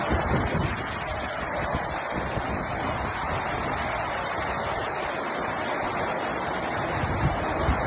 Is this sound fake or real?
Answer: real